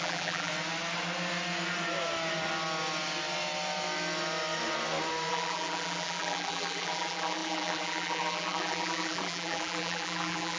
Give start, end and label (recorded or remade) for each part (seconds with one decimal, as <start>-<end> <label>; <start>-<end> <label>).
0.0-0.5 remade; 0.5-5.3 recorded; 5.3-10.6 remade